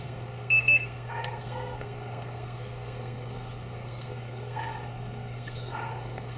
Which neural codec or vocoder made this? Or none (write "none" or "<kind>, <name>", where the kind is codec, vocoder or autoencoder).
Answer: codec, SNAC